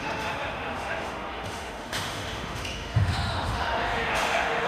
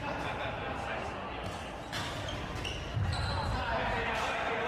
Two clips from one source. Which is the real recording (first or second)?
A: second